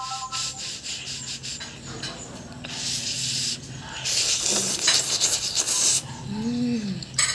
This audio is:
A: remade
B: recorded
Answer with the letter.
B